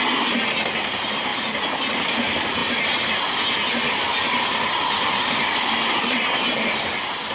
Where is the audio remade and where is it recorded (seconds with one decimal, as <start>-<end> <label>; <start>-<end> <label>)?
0.0-1.3 recorded; 1.3-2.0 remade; 2.0-2.6 recorded; 2.6-7.3 remade